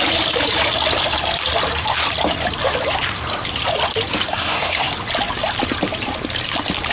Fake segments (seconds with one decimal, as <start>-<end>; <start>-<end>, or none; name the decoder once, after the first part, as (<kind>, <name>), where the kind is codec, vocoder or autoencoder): 4.3-4.9 (codec, SNAC)